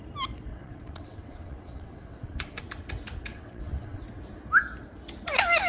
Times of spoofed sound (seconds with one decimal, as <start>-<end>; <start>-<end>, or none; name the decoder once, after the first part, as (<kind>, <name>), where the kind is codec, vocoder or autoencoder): 0.5-2.6 (vocoder, WaveNeXt); 3.3-4.0